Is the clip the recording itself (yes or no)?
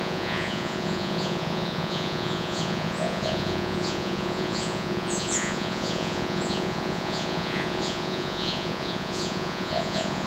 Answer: no